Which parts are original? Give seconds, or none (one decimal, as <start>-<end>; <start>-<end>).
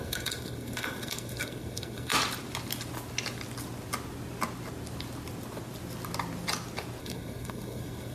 2.1-7.0